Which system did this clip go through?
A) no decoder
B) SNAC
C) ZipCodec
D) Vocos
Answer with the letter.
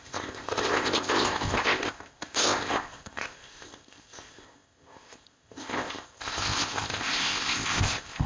C